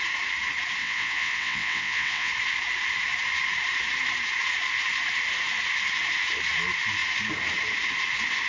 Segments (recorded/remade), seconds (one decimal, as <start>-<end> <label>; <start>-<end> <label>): 0.0-0.8 recorded; 0.8-2.3 remade; 2.3-8.5 recorded